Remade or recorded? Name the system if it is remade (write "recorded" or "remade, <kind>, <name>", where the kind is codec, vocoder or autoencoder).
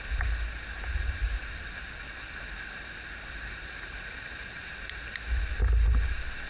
recorded